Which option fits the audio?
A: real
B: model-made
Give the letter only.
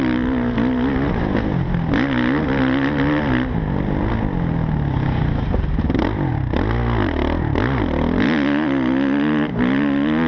A